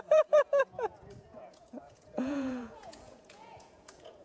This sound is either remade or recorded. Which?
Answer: remade